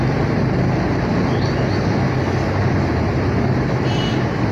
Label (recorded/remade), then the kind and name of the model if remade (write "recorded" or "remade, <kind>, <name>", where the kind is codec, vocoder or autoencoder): recorded